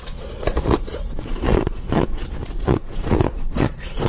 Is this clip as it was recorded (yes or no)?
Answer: no